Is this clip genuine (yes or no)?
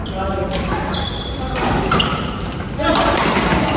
yes